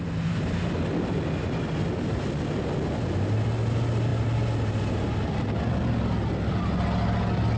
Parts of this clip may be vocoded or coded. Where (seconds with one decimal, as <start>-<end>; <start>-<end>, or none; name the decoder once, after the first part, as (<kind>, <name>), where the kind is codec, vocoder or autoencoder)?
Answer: none

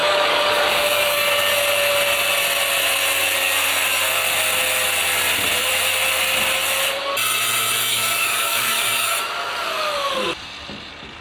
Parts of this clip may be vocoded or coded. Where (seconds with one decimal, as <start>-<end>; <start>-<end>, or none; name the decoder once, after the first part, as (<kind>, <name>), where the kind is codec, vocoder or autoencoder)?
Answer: 0.0-1.3 (codec, DAC); 7.9-9.2

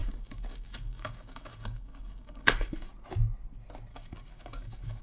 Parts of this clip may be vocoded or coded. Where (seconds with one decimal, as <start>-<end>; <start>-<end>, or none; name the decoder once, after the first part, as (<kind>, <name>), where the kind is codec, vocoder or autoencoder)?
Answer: 0.0-2.9 (codec, DAC); 3.9-5.0

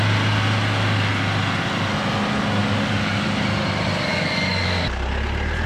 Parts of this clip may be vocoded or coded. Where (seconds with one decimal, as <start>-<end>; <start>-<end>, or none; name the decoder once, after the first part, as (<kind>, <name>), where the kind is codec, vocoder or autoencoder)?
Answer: 2.6-3.4 (codec, DAC); 4.1-4.8

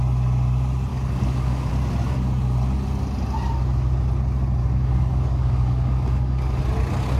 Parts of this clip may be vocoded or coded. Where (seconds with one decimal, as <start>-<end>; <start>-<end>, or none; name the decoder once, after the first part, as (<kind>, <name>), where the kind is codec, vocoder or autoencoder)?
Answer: 0.9-1.7 (codec, DAC); 4.6-6.6